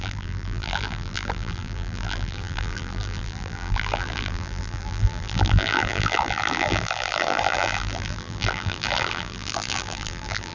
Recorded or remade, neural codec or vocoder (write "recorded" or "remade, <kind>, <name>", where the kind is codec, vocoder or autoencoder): remade, vocoder, BigVGAN v2